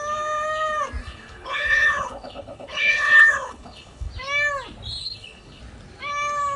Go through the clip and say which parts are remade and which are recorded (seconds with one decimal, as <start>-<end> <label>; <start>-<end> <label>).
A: 0.0-1.0 recorded; 1.0-4.1 remade; 4.1-5.0 recorded; 5.0-5.6 remade; 5.6-6.6 recorded